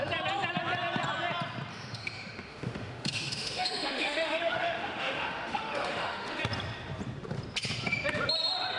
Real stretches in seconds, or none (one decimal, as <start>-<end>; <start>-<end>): 0.0-1.7; 6.4-8.8